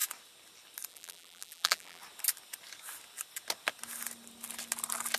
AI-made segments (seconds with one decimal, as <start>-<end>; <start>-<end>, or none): 0.9-2.0